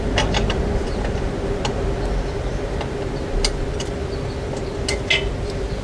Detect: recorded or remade recorded